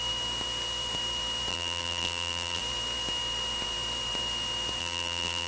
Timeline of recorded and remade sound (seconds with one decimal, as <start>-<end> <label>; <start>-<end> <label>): 0.0-1.5 recorded; 1.5-2.6 remade; 2.6-4.8 recorded; 4.8-5.5 remade